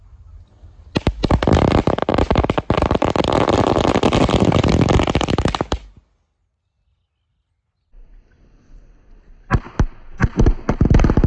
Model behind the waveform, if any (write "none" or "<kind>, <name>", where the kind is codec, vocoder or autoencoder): none